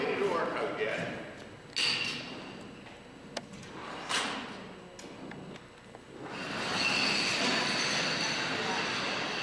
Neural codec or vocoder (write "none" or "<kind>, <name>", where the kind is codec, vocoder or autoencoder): none